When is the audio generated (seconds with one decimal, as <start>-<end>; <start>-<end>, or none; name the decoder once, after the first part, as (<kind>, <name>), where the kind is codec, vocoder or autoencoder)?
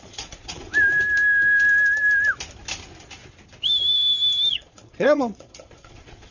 0.0-0.7 (vocoder, Vocos); 4.5-6.3